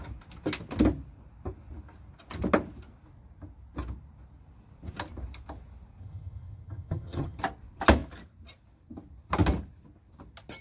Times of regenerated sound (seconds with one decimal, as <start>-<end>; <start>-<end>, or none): 6.0-7.4